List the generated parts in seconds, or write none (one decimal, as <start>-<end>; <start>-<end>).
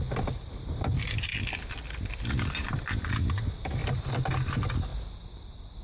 0.0-1.3; 3.1-3.8; 4.5-5.8